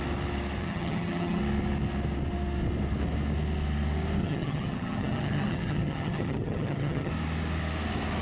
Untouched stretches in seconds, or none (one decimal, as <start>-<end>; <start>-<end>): 0.0-0.6; 1.4-4.2; 7.1-8.2